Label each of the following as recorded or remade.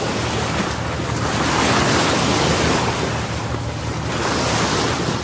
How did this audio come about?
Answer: recorded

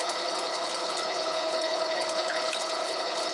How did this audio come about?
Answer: remade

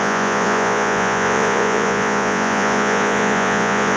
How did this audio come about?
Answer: remade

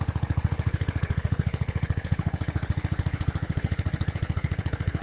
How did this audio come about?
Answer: remade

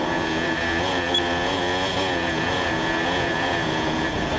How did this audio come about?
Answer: remade